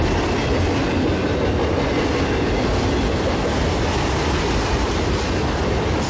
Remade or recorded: recorded